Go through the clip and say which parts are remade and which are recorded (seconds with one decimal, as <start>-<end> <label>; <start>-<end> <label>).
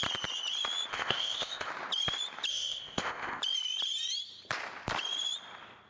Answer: 0.0-0.9 recorded; 0.9-1.7 remade; 1.7-2.5 recorded; 2.5-3.4 remade; 3.4-5.9 recorded